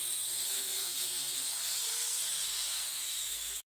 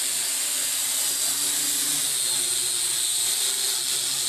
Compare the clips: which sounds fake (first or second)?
first